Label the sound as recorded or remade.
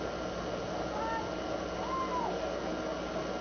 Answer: recorded